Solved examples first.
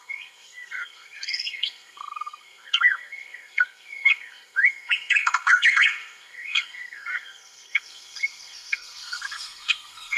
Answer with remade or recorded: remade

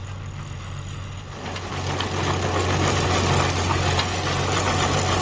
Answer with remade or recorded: recorded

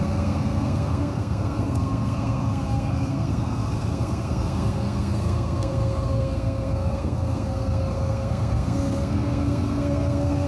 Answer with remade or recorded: remade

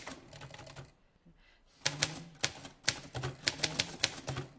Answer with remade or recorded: recorded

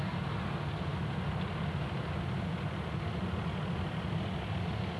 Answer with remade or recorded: recorded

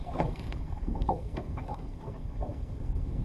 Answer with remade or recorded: remade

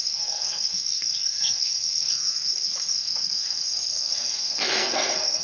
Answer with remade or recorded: remade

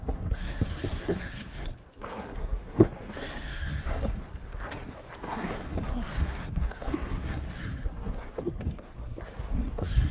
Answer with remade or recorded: remade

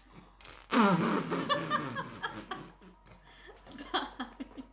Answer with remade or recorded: recorded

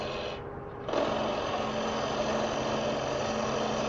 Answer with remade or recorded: recorded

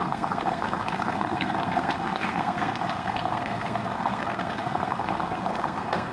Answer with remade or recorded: remade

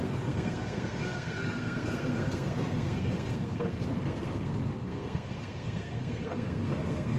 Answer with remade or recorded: remade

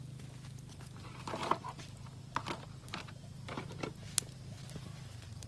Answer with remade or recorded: recorded